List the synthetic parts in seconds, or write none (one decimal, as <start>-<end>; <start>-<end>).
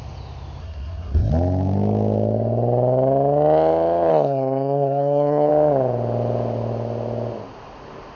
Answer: 0.6-1.3; 4.1-5.5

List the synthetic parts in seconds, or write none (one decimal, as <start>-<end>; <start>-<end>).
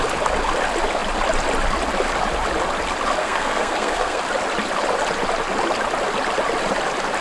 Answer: 3.2-4.2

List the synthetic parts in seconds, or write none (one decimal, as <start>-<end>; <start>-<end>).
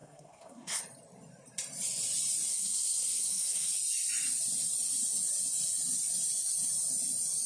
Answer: 0.0-0.8; 2.5-3.7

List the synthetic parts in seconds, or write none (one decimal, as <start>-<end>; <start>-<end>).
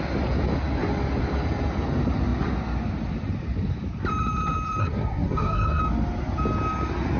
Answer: 4.8-5.8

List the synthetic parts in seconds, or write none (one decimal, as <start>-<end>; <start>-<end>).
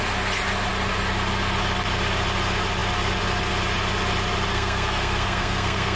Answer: 4.5-6.0